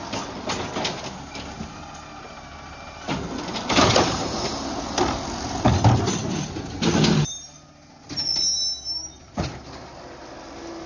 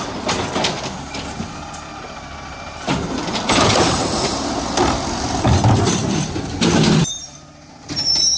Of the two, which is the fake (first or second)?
second